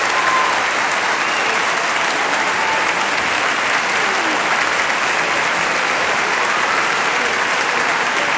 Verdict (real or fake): real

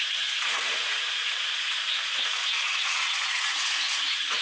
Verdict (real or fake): fake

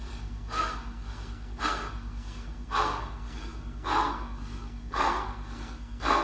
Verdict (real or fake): fake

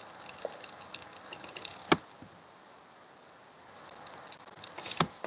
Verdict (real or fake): real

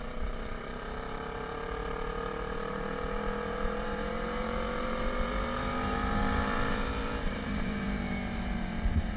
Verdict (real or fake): fake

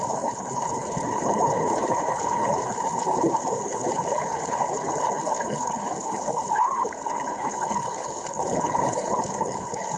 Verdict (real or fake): fake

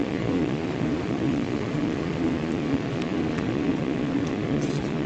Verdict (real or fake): fake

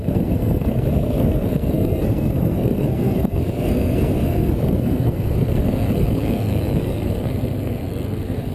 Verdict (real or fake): fake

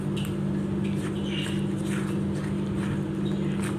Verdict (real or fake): real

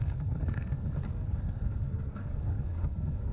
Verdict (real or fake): fake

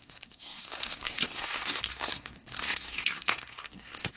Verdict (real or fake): fake